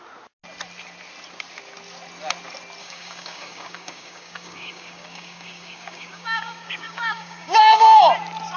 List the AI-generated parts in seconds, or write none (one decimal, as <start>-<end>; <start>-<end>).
2.8-8.0